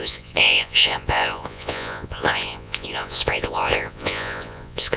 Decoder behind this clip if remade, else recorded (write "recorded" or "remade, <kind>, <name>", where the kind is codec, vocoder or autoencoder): remade, vocoder, Vocos